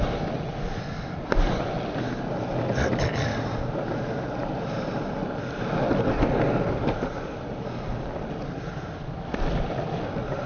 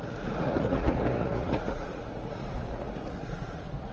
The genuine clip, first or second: first